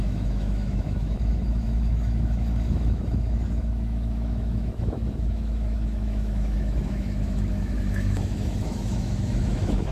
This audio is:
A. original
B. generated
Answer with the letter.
B